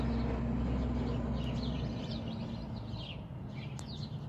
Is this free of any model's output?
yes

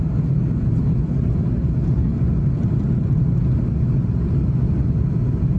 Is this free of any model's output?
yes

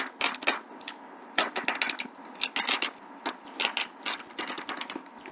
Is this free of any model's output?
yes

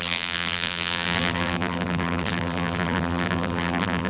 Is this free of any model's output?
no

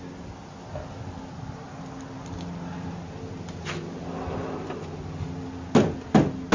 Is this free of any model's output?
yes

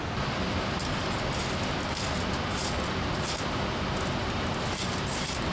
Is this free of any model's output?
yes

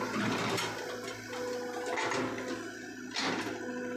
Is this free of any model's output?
yes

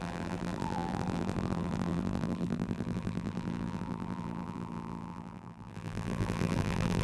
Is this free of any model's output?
no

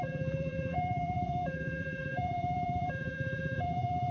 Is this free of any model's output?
no